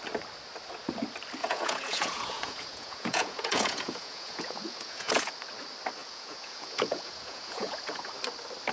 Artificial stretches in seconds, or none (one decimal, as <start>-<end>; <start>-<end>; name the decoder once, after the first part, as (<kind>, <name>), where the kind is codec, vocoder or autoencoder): 1.4-5.3 (vocoder, Vocos); 6.0-8.1